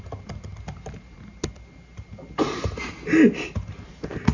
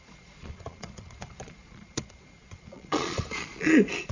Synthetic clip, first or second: second